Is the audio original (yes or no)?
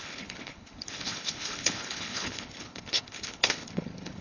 no